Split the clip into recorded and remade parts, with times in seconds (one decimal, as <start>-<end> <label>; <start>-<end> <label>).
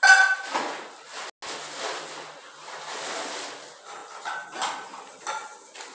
0.0-5.9 recorded